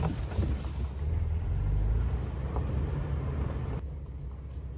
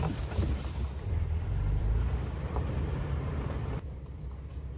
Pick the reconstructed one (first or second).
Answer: second